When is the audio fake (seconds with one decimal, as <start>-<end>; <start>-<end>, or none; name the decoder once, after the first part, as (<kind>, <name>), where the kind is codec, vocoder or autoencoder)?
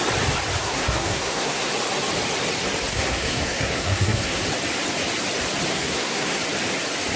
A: 0.6-1.7 (codec, SNAC); 2.9-4.4; 5.7-6.4